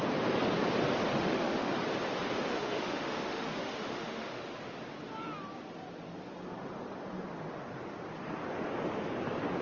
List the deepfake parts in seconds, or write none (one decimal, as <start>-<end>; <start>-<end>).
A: 1.1-1.7; 2.5-4.4